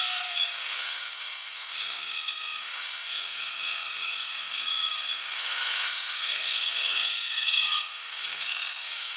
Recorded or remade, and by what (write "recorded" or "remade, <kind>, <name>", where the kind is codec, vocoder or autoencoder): remade, codec, SNAC